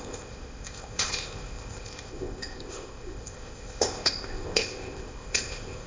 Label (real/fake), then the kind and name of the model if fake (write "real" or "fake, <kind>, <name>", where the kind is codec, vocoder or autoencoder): fake, codec, ZipCodec